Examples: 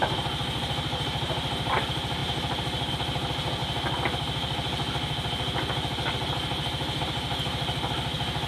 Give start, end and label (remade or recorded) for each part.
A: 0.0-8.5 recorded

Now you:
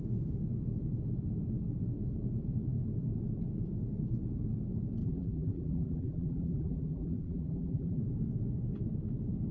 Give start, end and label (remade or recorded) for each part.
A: 0.0-5.0 recorded; 5.0-8.0 remade; 8.0-9.5 recorded

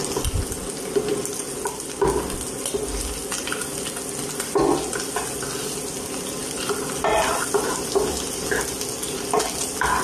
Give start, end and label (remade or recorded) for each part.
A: 0.0-10.0 recorded

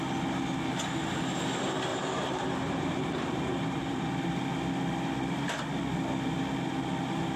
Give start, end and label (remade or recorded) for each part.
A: 0.0-1.9 recorded; 1.9-4.1 remade; 4.1-7.4 recorded

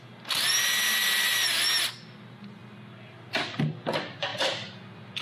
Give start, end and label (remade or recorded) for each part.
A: 0.0-5.2 recorded

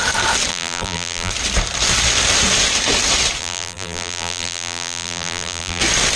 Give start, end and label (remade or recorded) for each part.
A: 0.0-0.5 recorded; 0.5-1.3 remade; 1.3-3.4 recorded; 3.4-5.8 remade; 5.8-6.2 recorded